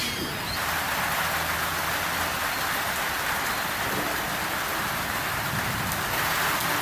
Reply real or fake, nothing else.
real